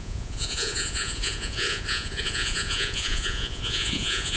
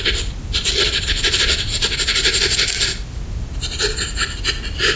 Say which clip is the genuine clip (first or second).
second